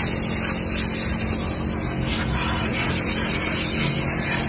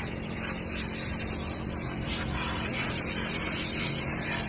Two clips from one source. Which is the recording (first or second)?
first